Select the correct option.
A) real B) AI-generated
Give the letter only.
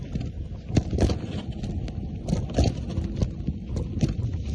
A